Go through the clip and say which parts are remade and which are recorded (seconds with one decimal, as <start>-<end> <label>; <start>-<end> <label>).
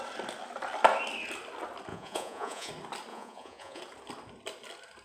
0.0-1.9 recorded; 1.9-2.7 remade; 2.7-3.1 recorded; 3.1-3.8 remade; 3.8-5.0 recorded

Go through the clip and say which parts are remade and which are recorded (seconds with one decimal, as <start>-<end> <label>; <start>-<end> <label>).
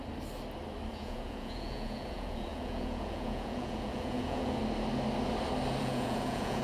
0.0-0.9 recorded; 0.9-4.6 remade; 4.6-5.8 recorded; 5.8-6.6 remade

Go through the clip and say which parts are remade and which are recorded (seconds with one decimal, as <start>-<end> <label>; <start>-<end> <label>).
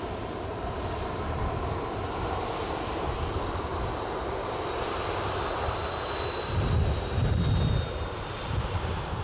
0.0-9.2 remade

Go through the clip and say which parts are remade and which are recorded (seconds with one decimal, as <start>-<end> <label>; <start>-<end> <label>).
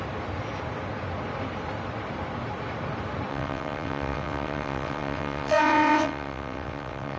0.0-3.3 recorded; 3.3-7.2 remade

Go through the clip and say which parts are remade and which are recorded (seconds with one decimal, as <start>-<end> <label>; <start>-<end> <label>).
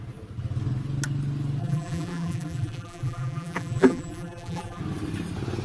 0.0-1.6 recorded; 1.6-4.8 remade; 4.8-5.6 recorded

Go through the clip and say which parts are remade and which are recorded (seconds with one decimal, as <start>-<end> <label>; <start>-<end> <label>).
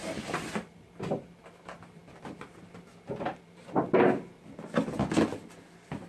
0.0-6.1 recorded